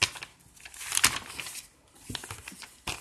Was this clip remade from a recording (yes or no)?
no